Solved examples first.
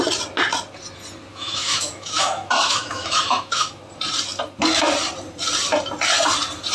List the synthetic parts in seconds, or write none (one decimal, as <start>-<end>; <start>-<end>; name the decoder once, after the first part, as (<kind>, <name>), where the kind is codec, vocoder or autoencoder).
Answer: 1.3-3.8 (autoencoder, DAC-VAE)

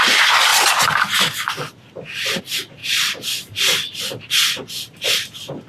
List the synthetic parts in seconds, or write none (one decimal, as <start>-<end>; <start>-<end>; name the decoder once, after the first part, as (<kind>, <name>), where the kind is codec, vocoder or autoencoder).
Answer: none

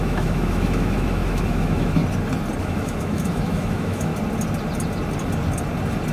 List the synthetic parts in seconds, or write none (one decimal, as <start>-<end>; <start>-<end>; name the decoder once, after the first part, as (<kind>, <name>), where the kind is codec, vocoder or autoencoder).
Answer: 0.0-2.0 (autoencoder, DAC-VAE); 2.6-4.1

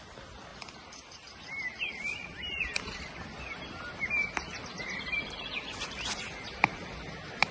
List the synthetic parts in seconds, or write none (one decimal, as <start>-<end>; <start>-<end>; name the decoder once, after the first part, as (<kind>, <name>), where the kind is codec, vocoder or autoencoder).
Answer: 0.5-3.0 (vocoder, BigVGAN v2)